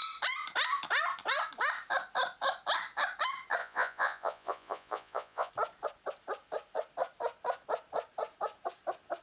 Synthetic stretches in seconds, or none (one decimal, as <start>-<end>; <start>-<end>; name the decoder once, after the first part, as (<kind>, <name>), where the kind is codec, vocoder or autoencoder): 3.6-5.5 (vocoder, Vocos)